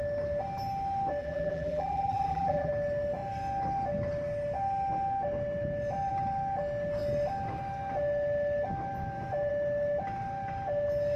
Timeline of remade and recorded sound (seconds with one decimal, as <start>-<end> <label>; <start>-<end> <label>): 0.0-1.2 recorded; 1.2-2.7 remade; 2.7-11.2 recorded

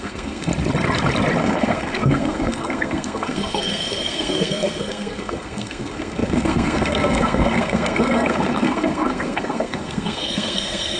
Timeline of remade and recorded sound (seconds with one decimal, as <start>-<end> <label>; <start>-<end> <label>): 0.0-0.5 remade; 0.5-1.4 recorded; 1.4-11.0 remade